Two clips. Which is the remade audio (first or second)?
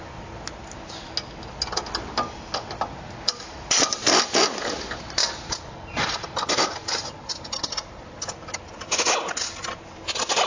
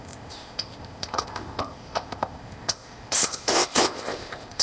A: second